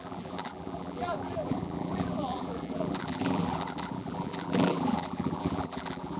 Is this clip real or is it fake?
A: fake